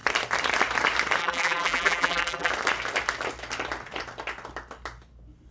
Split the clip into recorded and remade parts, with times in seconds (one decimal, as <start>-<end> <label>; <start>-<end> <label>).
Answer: 0.0-1.2 recorded; 1.2-2.5 remade; 2.5-5.5 recorded